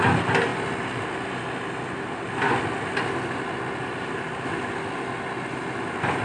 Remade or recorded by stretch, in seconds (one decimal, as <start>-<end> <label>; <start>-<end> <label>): 0.0-6.2 recorded